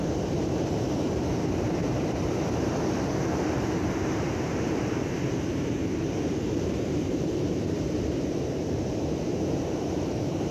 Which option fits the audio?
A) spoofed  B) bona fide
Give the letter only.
A